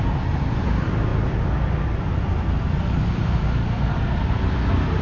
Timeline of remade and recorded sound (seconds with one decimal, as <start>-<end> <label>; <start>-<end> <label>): 0.0-5.0 recorded